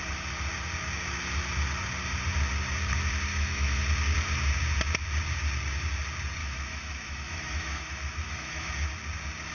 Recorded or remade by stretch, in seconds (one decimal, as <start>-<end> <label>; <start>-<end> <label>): 0.0-3.3 recorded; 3.3-3.8 remade; 3.8-6.4 recorded; 6.4-8.7 remade; 8.7-9.5 recorded